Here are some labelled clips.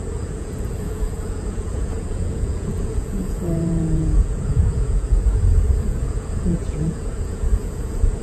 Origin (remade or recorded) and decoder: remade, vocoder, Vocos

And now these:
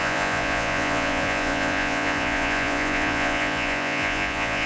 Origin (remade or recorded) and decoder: remade, vocoder, Vocos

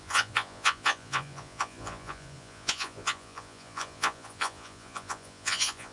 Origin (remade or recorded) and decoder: remade, vocoder, Vocos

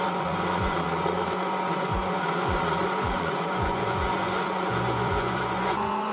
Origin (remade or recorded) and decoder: remade, vocoder, Vocos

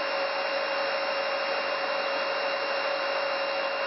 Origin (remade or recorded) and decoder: recorded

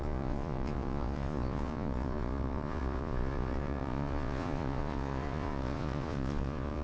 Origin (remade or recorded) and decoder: remade, vocoder, Vocos